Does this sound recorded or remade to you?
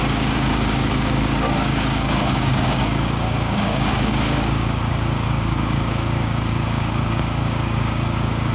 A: remade